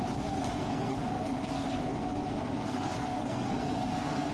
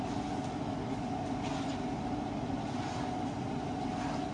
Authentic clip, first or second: second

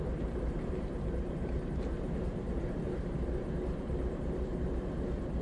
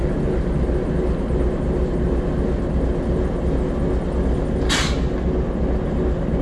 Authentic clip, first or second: second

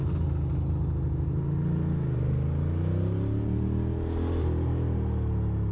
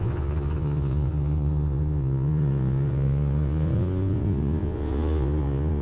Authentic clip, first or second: first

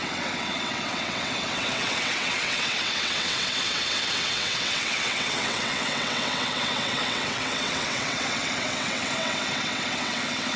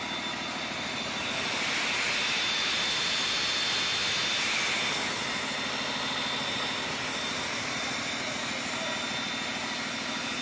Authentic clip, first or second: second